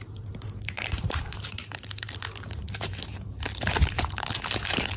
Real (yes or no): no